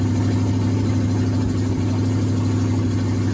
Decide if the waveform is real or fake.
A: real